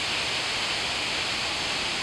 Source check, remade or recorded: recorded